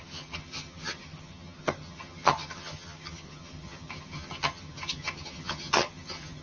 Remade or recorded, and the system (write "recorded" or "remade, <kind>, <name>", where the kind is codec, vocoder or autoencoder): remade, vocoder, HiFi-GAN